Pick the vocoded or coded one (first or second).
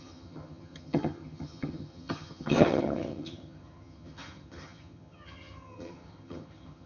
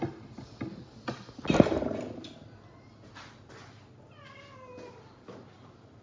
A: first